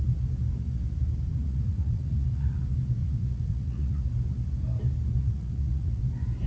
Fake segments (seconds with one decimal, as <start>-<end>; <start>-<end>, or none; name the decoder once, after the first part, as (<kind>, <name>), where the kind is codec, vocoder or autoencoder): 1.3-2.6 (vocoder, Vocos); 3.0-4.0; 5.2-6.0